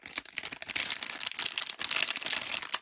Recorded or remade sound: recorded